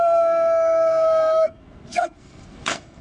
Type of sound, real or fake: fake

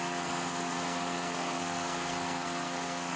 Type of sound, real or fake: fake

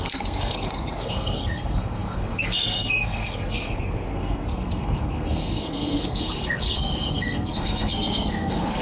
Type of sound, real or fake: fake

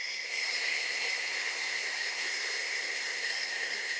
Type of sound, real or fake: fake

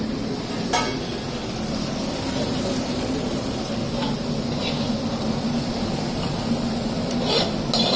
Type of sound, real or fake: real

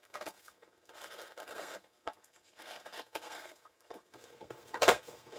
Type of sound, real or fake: fake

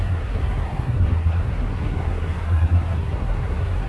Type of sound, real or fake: fake